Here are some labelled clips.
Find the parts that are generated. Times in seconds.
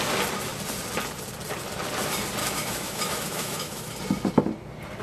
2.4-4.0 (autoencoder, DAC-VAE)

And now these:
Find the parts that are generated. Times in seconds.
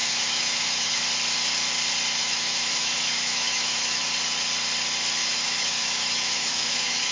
0.0-1.0 (autoencoder, DAC-VAE); 2.2-4.0; 5.2-7.1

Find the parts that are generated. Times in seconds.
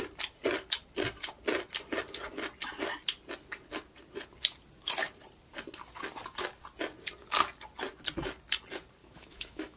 9.0-9.8 (autoencoder, DAC-VAE)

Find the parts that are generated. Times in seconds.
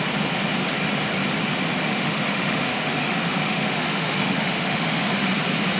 1.9-5.0 (autoencoder, DAC-VAE)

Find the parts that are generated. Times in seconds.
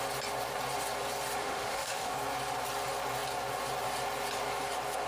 1.4-2.1 (autoencoder, DAC-VAE)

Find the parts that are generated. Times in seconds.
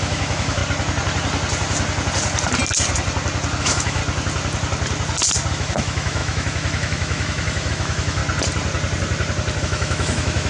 0.0-0.6 (autoencoder, DAC-VAE); 3.6-4.0; 5.5-8.2; 9.6-10.5